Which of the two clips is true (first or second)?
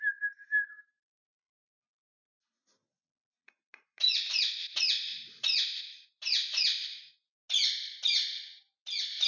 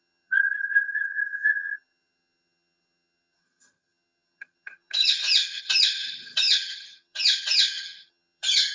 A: first